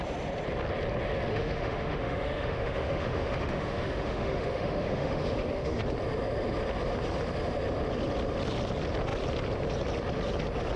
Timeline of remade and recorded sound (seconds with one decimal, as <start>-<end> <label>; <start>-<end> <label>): 0.0-1.3 recorded; 1.3-5.8 remade; 5.8-10.8 recorded